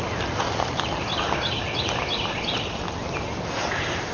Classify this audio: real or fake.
real